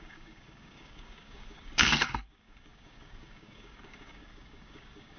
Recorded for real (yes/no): no